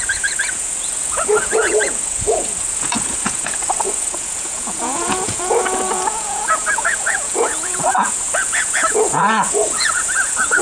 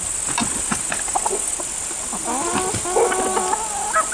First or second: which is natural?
second